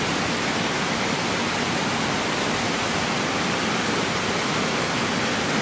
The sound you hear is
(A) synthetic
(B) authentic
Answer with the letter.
B